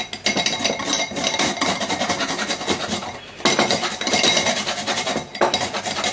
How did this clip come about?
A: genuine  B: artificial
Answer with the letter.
A